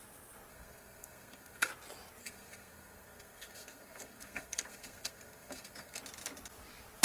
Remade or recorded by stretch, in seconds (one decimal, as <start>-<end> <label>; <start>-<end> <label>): 0.0-0.5 recorded; 0.5-1.7 remade; 1.7-2.2 recorded; 2.2-6.0 remade; 6.0-7.0 recorded